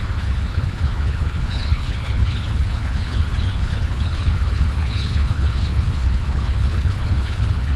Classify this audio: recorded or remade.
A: remade